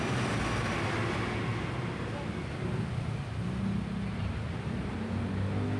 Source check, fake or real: real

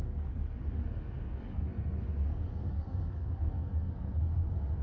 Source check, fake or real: fake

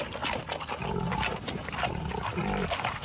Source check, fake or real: real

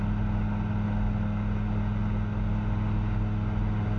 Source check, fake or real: real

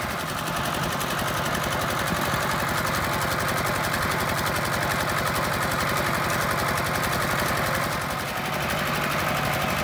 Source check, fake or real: real